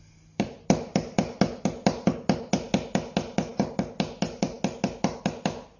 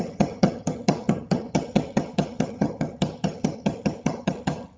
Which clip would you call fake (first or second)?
second